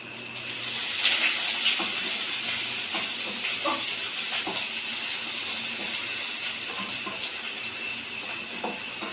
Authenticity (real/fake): real